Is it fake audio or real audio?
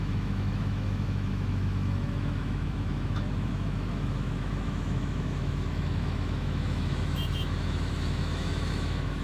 fake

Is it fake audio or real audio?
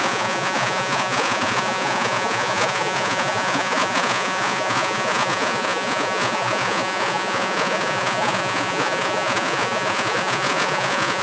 fake